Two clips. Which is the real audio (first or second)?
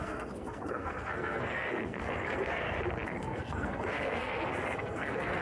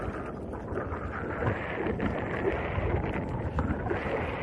second